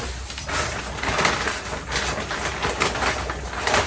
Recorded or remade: recorded